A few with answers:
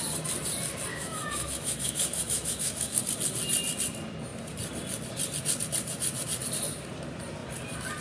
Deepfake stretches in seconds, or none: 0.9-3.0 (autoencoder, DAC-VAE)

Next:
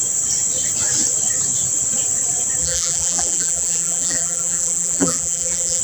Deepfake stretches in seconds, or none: 2.6-5.8 (vocoder, BigVGAN v2)